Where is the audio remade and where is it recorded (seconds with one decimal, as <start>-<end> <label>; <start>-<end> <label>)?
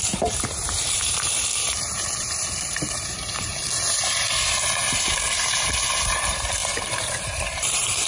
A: 0.0-8.1 remade